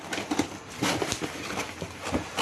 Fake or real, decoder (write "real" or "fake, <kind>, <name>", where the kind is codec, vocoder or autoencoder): real